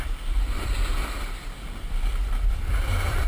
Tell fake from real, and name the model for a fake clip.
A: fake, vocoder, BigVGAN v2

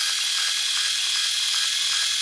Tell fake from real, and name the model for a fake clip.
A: fake, vocoder, BigVGAN v2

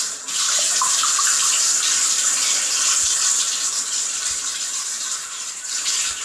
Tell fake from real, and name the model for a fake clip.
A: fake, vocoder, BigVGAN v2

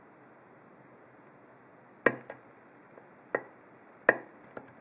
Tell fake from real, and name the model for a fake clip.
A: real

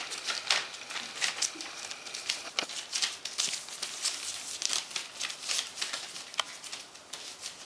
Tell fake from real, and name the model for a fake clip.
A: real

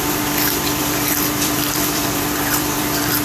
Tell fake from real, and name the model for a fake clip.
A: fake, vocoder, BigVGAN v2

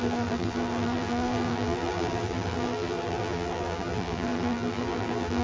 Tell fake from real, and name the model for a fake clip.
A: fake, vocoder, BigVGAN v2